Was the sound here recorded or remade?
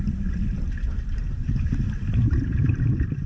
recorded